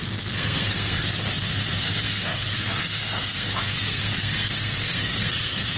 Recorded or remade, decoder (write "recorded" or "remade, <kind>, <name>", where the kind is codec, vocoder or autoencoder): remade, codec, SNAC